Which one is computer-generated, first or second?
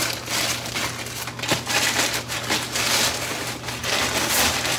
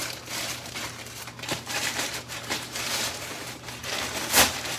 second